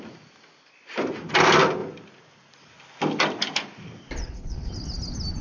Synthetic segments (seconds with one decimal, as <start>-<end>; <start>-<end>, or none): 4.2-4.7